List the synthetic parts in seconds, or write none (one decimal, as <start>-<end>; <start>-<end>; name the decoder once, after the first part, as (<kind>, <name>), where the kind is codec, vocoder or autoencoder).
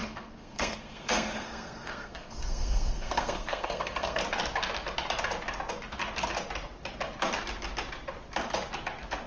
0.0-4.2 (codec, SNAC)